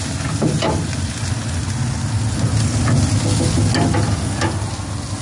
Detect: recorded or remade recorded